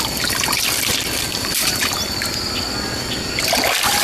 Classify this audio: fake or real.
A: real